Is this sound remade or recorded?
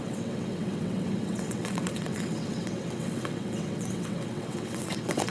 remade